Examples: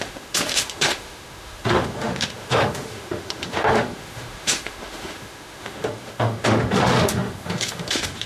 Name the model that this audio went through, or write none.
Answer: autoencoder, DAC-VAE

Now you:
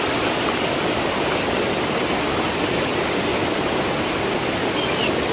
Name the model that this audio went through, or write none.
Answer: none